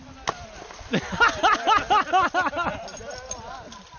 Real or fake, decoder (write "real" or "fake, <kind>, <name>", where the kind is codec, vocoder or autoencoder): real